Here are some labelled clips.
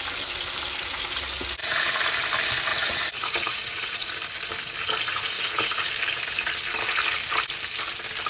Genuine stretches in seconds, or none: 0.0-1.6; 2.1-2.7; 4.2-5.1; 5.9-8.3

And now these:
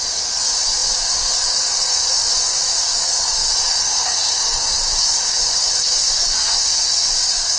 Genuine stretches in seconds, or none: none

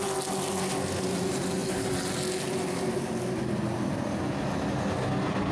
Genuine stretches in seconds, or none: 0.0-5.5

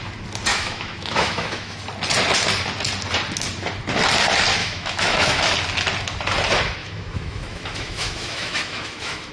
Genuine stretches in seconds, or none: 0.0-0.5; 1.8-4.6; 5.4-6.8

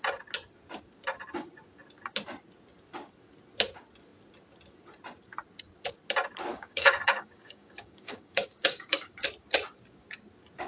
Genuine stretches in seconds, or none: 0.0-6.5; 9.1-10.7

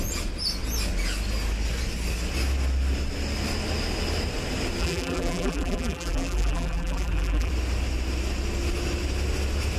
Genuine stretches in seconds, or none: 0.0-4.8; 7.5-9.8

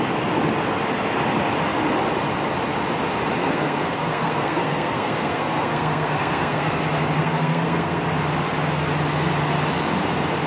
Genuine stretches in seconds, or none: 0.0-3.4; 6.8-7.2; 8.0-10.5